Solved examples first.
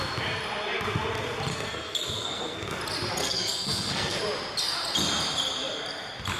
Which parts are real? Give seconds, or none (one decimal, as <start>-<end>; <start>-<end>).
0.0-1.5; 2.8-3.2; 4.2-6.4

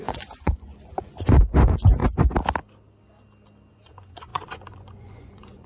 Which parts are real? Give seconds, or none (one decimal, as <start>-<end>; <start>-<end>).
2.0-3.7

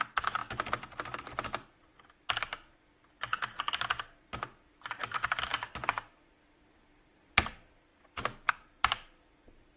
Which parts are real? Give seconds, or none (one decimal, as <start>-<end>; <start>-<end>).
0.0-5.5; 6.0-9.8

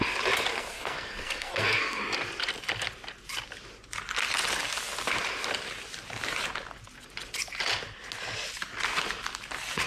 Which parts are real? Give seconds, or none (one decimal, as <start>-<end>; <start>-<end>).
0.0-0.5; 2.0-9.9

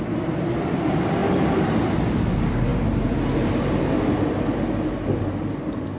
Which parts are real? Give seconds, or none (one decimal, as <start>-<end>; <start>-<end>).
0.0-6.0

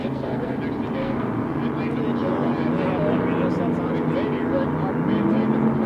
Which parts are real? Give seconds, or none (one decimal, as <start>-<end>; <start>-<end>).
0.6-1.0; 1.6-5.9

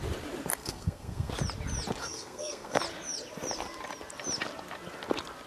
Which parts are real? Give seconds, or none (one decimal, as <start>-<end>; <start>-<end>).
0.0-0.6; 1.3-2.0; 2.8-5.5